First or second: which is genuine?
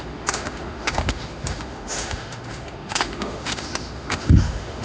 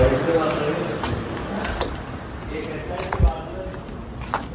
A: second